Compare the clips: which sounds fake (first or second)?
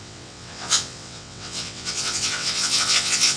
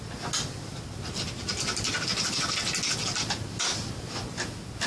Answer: first